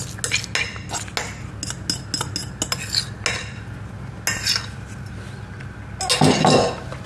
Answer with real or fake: real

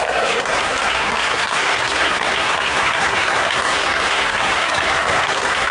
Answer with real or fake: fake